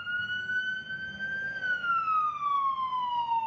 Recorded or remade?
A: recorded